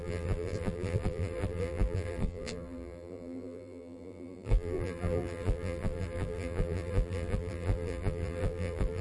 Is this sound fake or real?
fake